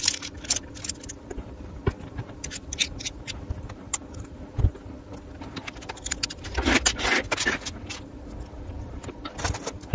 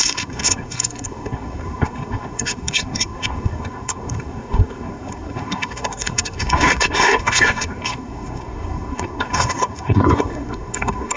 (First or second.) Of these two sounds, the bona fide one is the first